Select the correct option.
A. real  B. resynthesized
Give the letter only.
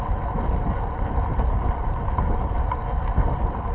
A